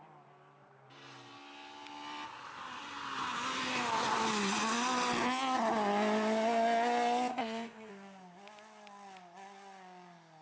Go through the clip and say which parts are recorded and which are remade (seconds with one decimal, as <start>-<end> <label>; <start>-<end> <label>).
0.0-7.3 recorded; 7.3-7.9 remade; 7.9-10.4 recorded